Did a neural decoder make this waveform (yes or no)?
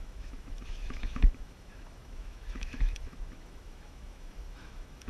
yes